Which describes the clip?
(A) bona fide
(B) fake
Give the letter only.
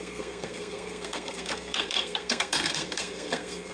B